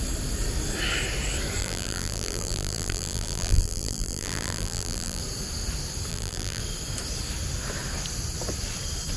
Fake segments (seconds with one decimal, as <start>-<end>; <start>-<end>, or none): 1.6-5.2; 6.1-6.6